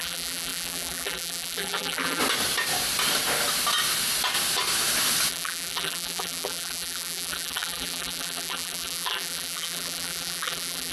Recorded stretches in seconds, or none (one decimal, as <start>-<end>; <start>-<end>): 2.2-5.3